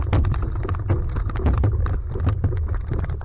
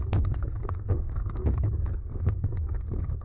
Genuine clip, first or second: first